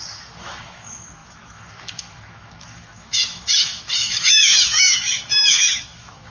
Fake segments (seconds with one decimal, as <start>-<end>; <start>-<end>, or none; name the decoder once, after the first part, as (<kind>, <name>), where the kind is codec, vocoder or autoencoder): 0.0-6.3 (autoencoder, DAC-VAE)